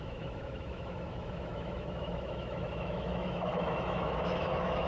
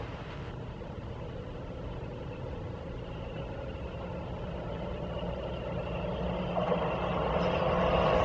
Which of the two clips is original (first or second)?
second